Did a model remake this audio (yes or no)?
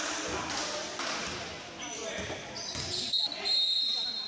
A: no